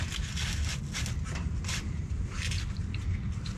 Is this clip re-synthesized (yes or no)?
no